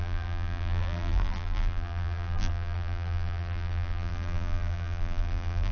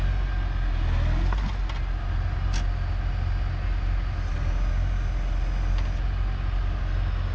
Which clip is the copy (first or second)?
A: first